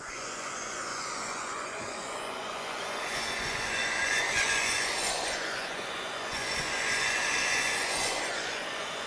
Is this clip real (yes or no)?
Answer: no